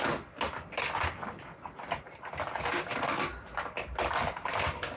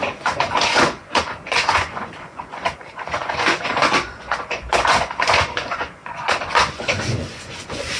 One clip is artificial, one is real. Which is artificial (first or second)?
second